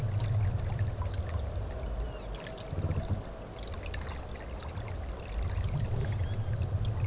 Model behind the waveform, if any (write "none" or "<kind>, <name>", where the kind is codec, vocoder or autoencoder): none